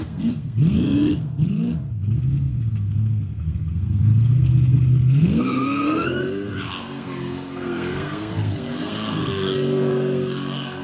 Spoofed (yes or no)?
yes